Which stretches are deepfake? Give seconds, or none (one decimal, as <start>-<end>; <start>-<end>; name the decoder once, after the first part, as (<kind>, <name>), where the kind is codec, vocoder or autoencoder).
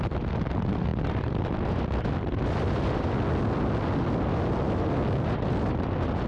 none